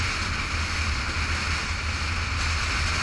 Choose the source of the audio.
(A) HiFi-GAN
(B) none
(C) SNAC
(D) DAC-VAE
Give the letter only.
B